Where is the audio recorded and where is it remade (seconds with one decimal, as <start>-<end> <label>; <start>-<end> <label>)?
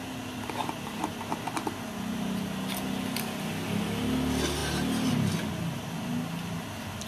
0.0-7.1 recorded